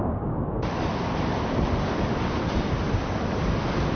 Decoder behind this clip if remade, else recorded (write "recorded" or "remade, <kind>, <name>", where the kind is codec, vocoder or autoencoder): recorded